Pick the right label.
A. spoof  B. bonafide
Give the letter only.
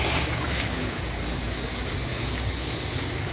A